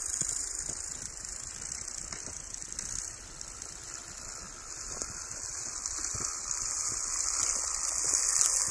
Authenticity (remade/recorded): recorded